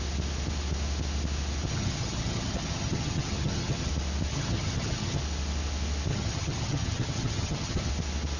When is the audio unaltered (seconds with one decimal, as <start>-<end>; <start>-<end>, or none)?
0.0-1.7; 3.9-4.3; 5.2-6.1; 7.9-8.4